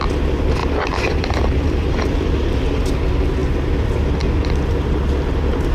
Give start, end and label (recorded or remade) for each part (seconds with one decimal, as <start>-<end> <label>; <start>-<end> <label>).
0.0-0.6 recorded; 0.6-2.3 remade; 2.3-5.7 recorded